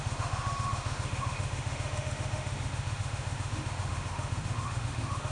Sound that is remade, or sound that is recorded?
remade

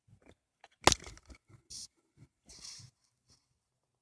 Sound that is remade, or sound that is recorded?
recorded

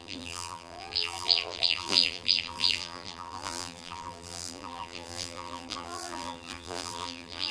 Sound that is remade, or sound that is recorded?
remade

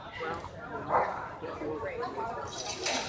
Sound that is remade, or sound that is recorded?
recorded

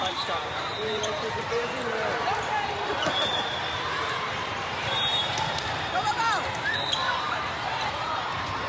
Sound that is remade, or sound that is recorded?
remade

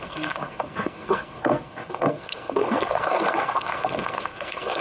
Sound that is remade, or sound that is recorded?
remade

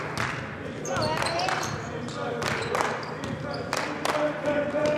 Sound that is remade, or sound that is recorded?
recorded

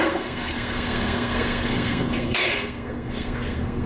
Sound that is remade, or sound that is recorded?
remade